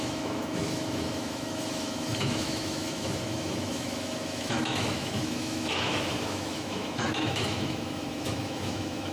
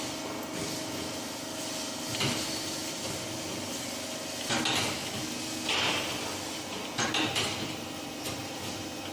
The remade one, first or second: first